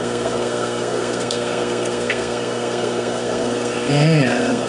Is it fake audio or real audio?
fake